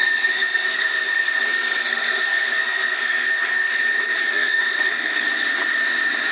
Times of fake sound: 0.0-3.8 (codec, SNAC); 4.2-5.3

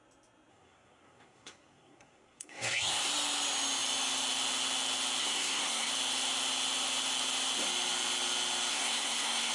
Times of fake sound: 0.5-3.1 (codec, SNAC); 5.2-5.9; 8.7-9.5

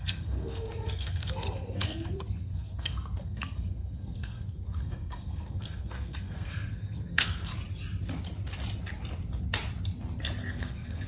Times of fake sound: 0.0-7.5 (codec, SNAC); 10.5-11.1

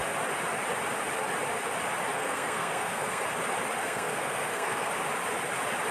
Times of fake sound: 2.1-3.2 (codec, SNAC); 3.8-4.9

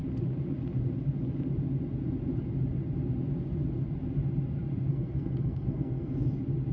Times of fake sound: 4.9-6.3 (codec, SNAC)

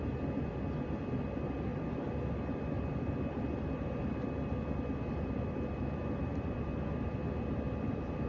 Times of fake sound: none

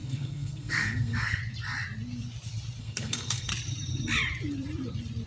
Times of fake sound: 0.0-1.4 (codec, SNAC); 2.8-3.5